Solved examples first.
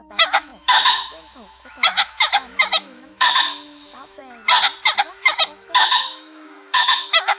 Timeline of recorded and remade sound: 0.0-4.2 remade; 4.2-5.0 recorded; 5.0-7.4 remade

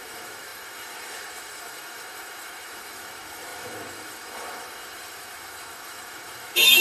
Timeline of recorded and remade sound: 0.0-6.8 remade

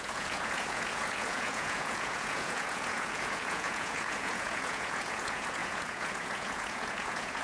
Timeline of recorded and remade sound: 0.0-7.4 remade

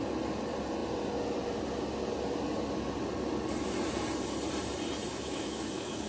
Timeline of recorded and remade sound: 0.0-5.1 recorded; 5.1-6.1 remade

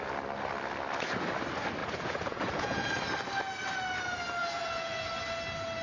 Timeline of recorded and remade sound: 0.0-1.8 recorded; 1.8-2.9 remade; 2.9-4.4 recorded; 4.4-5.1 remade; 5.1-5.8 recorded

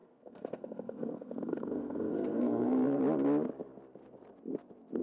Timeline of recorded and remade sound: 0.0-3.0 remade; 3.0-5.0 recorded

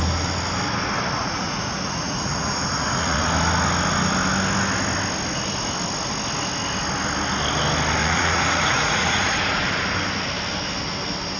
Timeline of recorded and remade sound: 0.0-1.2 recorded; 1.2-3.2 remade; 3.2-8.0 recorded; 8.0-9.6 remade; 9.6-11.4 recorded

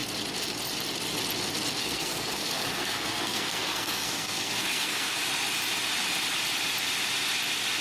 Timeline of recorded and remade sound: 0.0-1.8 recorded; 1.8-5.2 remade; 5.2-7.8 recorded